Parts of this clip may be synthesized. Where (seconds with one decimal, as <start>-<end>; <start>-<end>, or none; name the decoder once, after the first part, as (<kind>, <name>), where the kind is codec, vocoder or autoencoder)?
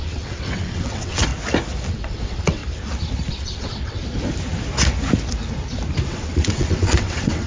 0.0-1.3 (vocoder, WaveNeXt); 1.9-2.6; 3.3-4.0; 6.1-7.5